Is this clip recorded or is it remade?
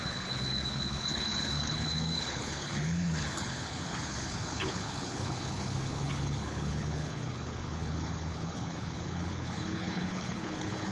remade